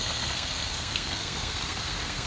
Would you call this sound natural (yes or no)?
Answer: no